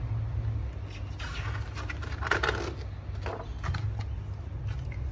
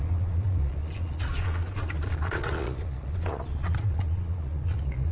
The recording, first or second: first